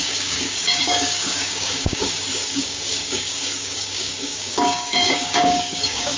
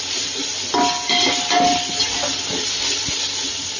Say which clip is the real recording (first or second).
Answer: second